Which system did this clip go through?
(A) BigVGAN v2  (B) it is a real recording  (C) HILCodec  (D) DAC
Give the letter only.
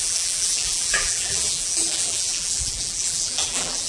A